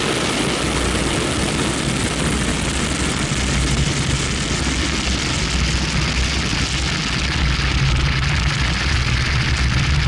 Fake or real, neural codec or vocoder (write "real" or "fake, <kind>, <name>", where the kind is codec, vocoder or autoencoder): real